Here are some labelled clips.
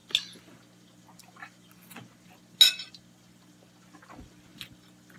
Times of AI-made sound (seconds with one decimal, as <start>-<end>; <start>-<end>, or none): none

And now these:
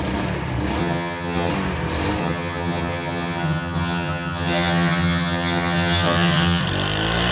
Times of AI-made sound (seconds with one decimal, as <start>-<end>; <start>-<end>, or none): 0.8-1.5; 2.2-6.6

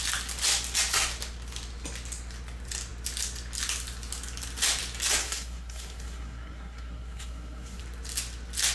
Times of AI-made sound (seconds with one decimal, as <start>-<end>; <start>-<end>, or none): 5.2-7.8